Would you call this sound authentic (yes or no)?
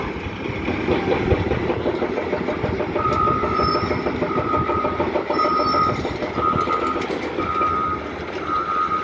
yes